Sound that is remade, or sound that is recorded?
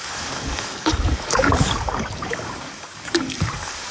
remade